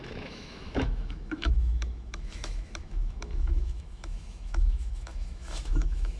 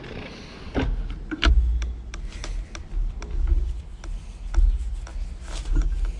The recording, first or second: second